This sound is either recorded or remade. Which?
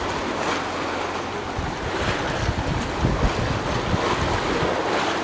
recorded